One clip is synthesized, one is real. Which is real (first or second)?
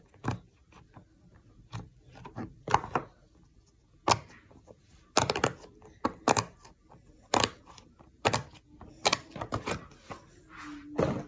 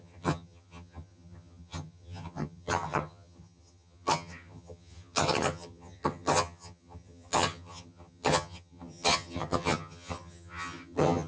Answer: first